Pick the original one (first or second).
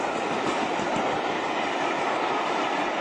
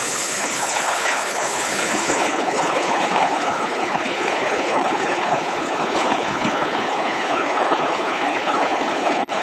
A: first